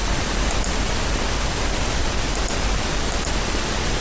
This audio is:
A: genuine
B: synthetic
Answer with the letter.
B